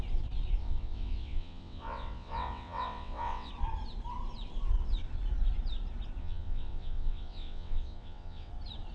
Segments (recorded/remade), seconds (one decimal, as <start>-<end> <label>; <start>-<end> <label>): 0.0-0.6 recorded; 0.6-3.5 remade; 3.5-6.2 recorded; 6.2-8.5 remade; 8.5-8.9 recorded